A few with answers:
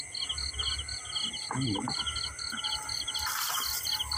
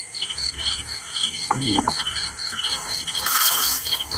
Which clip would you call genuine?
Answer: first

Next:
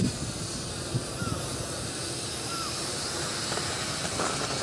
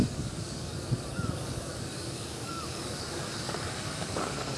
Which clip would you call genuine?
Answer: first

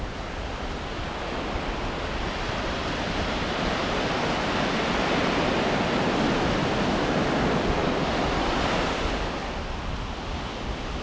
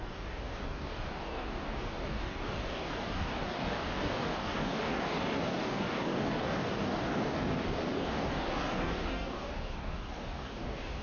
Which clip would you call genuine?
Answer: first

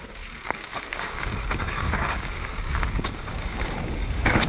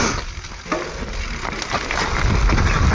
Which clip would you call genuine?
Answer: second